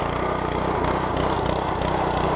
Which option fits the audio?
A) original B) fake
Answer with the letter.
A